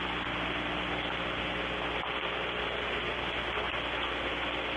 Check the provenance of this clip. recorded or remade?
recorded